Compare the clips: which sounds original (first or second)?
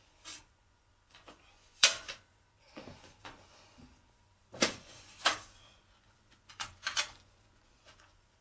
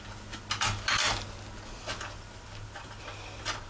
second